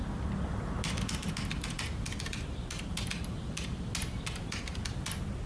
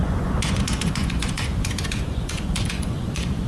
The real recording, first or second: first